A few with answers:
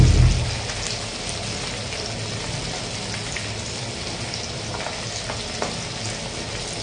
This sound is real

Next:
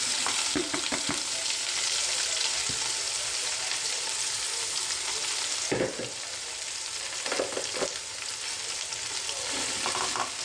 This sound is real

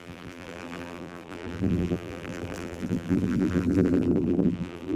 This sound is fake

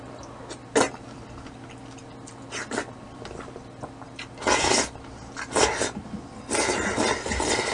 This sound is real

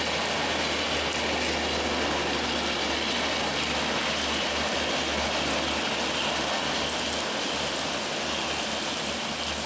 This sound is real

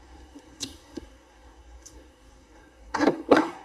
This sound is fake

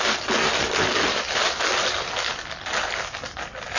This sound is real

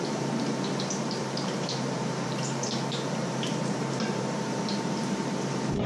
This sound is fake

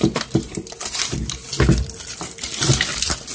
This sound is real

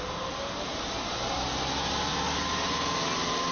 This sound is real